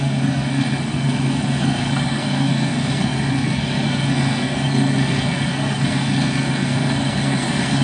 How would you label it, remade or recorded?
remade